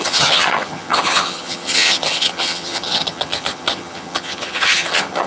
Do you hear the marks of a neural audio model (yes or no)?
yes